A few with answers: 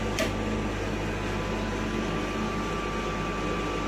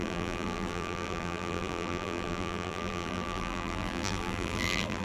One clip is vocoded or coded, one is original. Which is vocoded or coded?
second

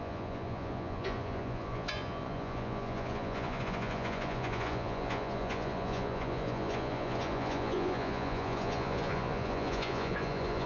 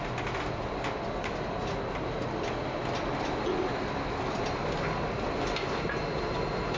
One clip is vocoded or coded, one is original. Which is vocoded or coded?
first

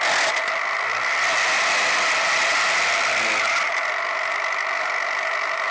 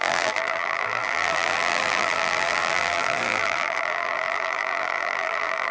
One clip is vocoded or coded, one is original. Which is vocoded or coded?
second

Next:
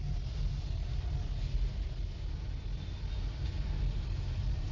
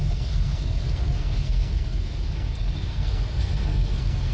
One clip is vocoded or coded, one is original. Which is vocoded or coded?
second